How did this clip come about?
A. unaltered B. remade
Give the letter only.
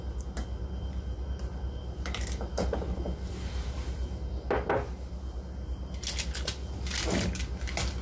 A